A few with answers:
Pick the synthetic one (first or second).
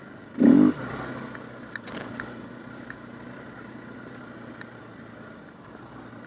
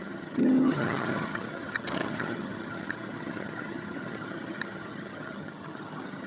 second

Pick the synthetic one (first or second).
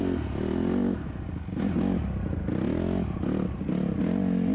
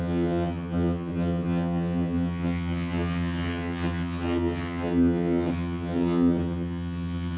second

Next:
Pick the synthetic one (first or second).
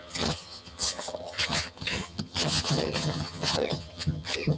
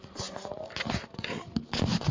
first